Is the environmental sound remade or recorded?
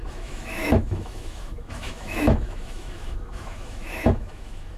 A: remade